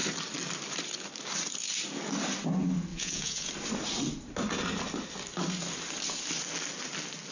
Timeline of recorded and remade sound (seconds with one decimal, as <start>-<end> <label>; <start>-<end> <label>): 0.0-2.9 recorded; 2.9-3.5 remade; 3.5-7.3 recorded

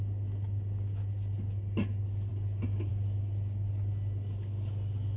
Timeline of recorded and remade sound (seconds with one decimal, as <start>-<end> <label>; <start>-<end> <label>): 0.0-5.2 recorded

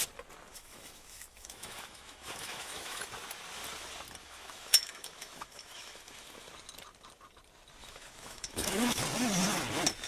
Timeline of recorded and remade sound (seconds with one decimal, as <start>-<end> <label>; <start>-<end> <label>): 0.0-0.5 recorded; 0.5-3.0 remade; 3.0-4.2 recorded; 4.2-6.5 remade; 6.5-7.8 recorded; 7.8-9.0 remade; 9.0-10.1 recorded

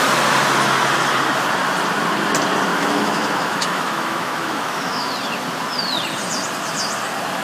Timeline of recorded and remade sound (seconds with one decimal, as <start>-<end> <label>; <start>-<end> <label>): 0.0-2.7 recorded; 2.7-5.1 remade; 5.1-7.4 recorded

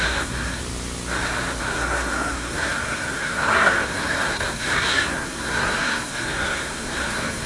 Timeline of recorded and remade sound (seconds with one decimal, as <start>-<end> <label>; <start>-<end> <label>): 0.0-0.6 remade; 0.6-1.6 recorded; 1.6-7.5 remade

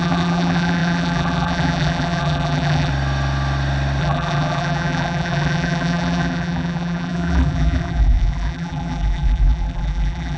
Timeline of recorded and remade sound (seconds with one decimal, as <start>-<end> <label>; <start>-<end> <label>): 0.0-2.9 remade; 2.9-4.0 recorded; 4.0-10.4 remade

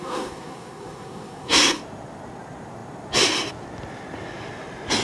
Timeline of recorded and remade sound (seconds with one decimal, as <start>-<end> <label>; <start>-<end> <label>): 0.0-1.8 remade; 1.8-5.0 recorded

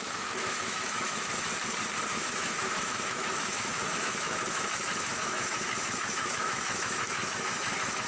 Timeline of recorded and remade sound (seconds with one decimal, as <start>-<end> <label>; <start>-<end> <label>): 0.0-1.5 remade; 1.5-2.1 recorded; 2.1-8.1 remade